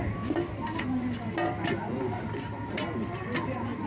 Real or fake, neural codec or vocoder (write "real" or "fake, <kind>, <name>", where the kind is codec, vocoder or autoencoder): real